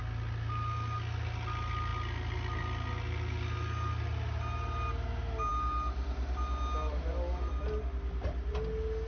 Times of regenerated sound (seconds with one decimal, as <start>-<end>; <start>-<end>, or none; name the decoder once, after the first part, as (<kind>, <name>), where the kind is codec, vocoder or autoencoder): none